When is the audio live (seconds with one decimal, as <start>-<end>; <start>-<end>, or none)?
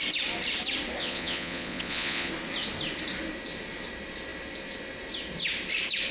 0.0-1.0; 2.3-6.1